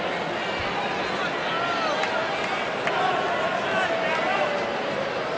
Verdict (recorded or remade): recorded